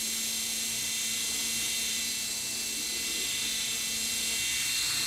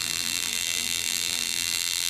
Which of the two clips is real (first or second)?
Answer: first